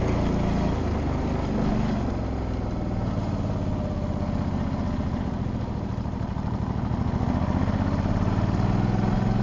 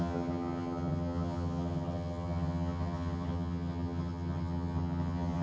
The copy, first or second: second